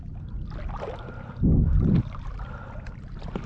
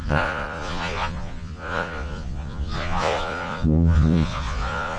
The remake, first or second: second